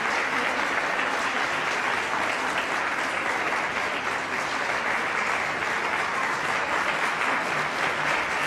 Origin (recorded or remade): recorded